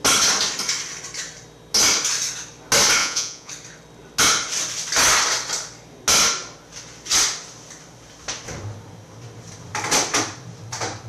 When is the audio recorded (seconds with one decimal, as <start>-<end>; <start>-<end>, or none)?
0.0-3.0; 3.5-11.1